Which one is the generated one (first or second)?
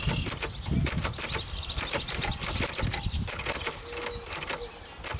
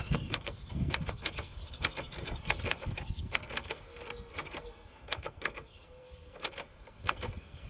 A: second